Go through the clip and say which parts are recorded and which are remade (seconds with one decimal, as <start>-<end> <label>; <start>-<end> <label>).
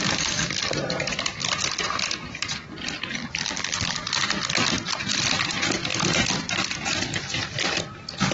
0.0-3.2 recorded; 3.2-4.0 remade; 4.0-8.3 recorded